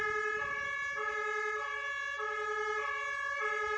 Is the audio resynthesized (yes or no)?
no